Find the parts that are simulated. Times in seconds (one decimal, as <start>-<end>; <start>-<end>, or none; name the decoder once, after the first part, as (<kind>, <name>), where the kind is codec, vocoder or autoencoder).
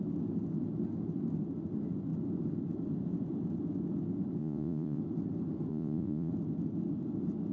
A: 4.4-5.0 (vocoder, Vocos); 5.7-6.3